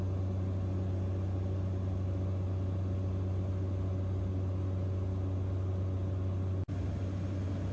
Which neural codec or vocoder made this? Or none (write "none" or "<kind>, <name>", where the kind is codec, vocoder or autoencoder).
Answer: none